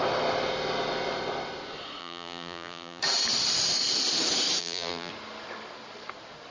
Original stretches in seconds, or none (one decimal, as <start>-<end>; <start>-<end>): 0.0-2.0; 3.0-4.6; 5.1-6.5